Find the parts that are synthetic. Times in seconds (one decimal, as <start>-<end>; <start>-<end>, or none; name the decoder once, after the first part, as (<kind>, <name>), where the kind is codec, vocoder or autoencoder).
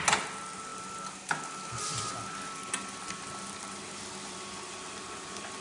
none